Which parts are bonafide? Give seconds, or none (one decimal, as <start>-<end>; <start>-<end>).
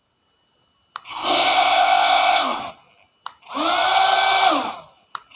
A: 0.0-1.1; 2.6-5.4